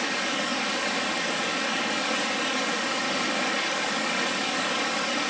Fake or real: fake